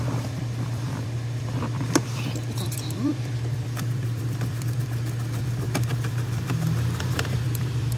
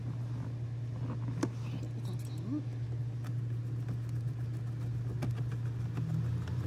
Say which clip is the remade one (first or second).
first